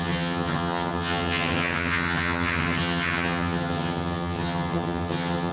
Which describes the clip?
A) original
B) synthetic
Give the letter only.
B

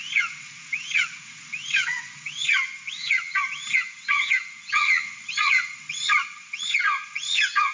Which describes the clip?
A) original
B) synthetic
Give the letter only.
B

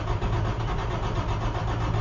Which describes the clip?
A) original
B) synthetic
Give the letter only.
A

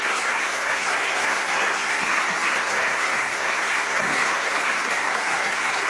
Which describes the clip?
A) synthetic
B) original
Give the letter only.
A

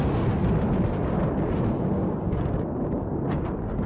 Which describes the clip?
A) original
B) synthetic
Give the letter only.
A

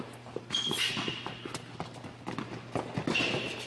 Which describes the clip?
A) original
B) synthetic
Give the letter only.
A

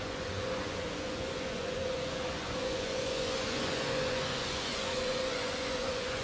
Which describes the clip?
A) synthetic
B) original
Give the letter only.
A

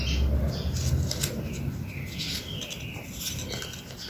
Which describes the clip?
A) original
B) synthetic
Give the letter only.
A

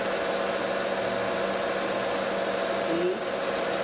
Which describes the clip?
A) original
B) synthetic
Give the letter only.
A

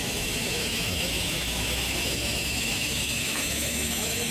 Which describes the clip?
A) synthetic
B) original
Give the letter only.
A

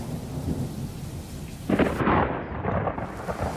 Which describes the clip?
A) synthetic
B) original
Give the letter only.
B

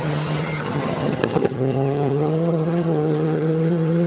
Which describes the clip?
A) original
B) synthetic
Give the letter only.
B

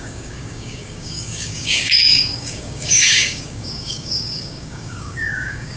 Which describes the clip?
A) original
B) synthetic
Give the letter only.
B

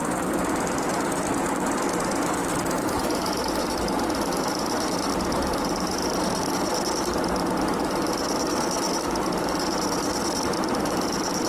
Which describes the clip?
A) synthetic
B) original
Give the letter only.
B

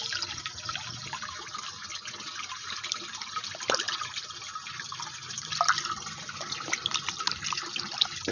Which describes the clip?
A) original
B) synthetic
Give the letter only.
A